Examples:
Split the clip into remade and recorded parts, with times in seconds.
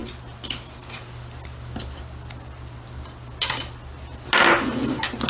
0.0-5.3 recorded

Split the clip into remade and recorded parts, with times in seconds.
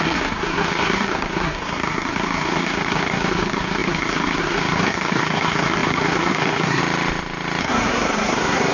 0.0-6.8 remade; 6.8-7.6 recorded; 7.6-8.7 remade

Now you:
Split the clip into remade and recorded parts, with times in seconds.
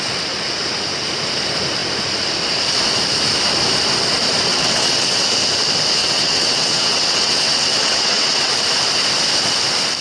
0.0-4.5 recorded; 4.5-5.2 remade; 5.2-6.0 recorded; 6.0-8.5 remade; 8.5-10.0 recorded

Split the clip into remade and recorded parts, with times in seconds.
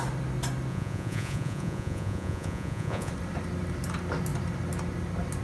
0.0-0.7 recorded; 0.7-3.1 remade; 3.1-5.4 recorded